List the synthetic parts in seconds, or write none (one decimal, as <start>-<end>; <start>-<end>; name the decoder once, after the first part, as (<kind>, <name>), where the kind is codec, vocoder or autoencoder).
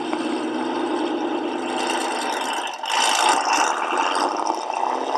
none